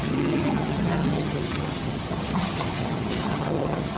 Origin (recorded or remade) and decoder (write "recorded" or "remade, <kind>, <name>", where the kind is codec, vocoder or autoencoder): remade, vocoder, HiFi-GAN